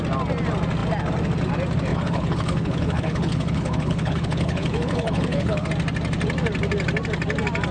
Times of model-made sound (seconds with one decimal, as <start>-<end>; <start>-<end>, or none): 1.9-5.7